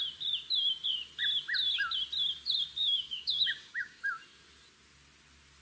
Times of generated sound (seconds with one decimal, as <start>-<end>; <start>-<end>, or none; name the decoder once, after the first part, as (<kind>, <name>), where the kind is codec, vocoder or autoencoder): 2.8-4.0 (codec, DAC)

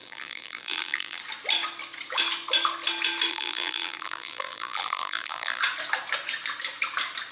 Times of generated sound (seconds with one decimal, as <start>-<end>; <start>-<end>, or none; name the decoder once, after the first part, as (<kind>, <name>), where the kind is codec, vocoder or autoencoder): 0.0-1.2 (vocoder, BigVGAN v2); 3.3-5.6

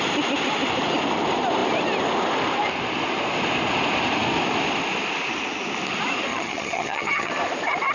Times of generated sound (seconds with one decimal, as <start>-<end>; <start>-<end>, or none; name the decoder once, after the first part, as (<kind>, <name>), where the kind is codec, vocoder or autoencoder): 6.3-7.3 (vocoder, HiFi-GAN)

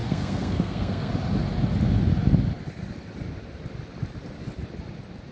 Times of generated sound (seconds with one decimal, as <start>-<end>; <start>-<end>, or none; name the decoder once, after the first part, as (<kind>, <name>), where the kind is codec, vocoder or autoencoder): 0.0-1.1 (codec, SNAC)

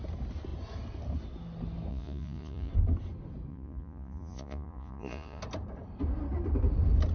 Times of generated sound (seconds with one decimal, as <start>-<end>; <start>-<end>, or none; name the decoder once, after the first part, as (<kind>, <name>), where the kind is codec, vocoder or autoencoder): 1.9-2.7 (vocoder, Vocos); 3.5-5.4

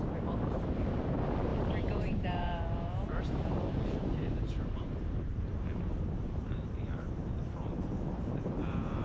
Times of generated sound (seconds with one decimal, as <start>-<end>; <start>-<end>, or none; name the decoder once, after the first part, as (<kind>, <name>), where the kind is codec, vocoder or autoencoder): 0.0-9.0 (vocoder, BigVGAN v2)